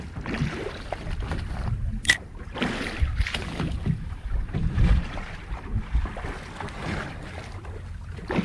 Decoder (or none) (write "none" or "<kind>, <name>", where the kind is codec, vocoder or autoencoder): none